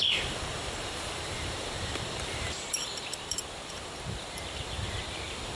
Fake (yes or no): yes